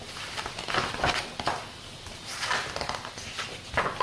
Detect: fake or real real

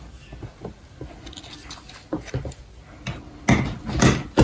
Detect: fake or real real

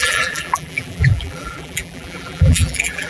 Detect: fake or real fake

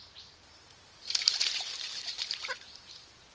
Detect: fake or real fake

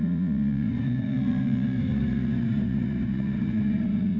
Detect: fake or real fake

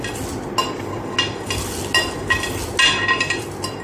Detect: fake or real real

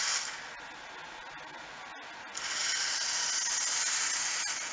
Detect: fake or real real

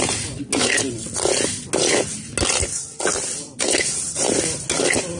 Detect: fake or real real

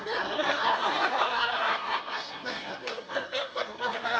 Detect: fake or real fake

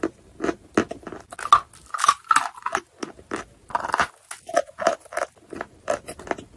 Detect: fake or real real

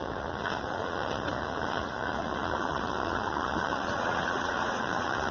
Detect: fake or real fake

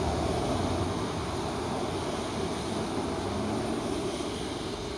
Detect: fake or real real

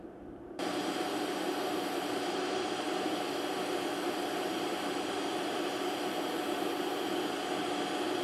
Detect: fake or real fake